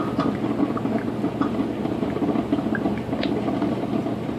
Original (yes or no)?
yes